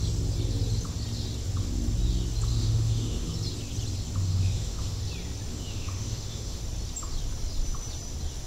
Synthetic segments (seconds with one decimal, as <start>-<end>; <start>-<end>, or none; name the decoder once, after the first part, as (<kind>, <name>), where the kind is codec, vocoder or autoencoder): 2.5-3.3 (autoencoder, DAC-VAE); 4.2-5.0; 5.5-6.6